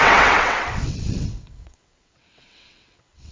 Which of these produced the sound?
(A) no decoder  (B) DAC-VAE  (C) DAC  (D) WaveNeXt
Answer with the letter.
D